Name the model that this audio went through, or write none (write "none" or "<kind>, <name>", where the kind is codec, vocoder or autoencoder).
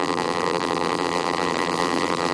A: vocoder, BigVGAN v2